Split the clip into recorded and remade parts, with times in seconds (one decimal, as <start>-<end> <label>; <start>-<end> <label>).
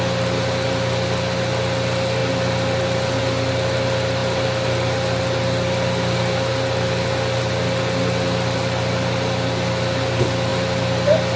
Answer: 0.0-11.4 recorded